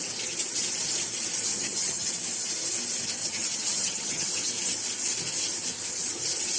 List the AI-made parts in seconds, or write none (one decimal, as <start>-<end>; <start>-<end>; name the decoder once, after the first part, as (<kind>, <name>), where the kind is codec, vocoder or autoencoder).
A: 1.5-2.1 (vocoder, HiFi-GAN); 3.2-4.3